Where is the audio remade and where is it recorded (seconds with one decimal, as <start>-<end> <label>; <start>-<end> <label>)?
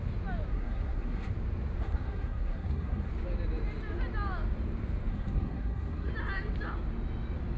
0.0-0.5 recorded; 0.5-1.3 remade; 1.3-1.8 recorded; 1.8-3.1 remade; 3.1-5.1 recorded; 5.1-6.1 remade; 6.1-7.6 recorded